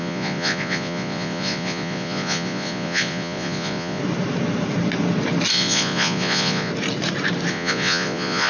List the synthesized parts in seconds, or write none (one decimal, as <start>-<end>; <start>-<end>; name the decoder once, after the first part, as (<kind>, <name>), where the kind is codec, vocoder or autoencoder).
0.0-4.0 (vocoder, Vocos); 5.5-6.7; 7.5-8.5